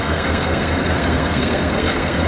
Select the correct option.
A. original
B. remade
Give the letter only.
B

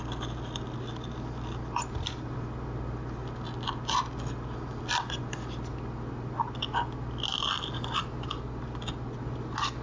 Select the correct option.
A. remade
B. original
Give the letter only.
B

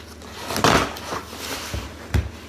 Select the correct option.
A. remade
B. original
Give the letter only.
B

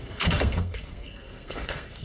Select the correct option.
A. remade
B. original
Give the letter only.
A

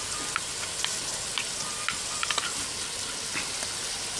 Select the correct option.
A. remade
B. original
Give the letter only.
B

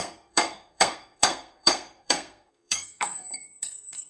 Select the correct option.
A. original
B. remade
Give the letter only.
B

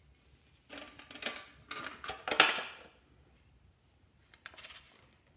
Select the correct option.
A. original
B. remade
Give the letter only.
A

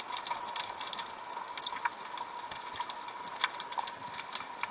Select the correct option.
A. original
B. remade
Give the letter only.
A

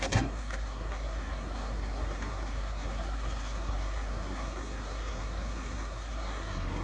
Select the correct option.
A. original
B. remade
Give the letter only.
B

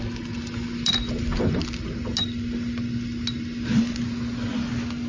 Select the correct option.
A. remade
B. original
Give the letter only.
B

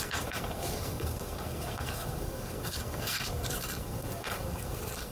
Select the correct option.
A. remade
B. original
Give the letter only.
A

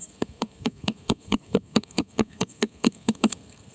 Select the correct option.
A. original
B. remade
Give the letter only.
B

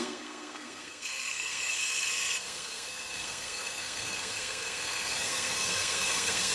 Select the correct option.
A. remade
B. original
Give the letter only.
A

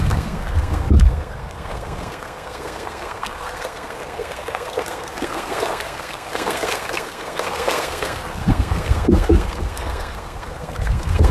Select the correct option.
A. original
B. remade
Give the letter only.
B